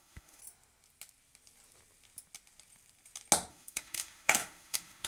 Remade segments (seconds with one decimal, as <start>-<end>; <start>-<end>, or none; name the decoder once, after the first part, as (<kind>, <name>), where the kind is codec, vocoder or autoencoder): 0.0-0.4 (autoencoder, DAC-VAE); 3.5-5.1